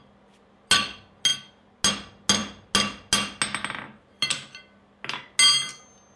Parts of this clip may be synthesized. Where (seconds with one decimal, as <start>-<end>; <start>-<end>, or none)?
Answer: none